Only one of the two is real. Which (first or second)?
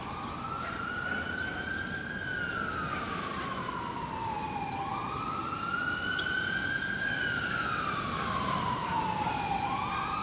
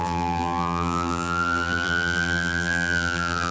first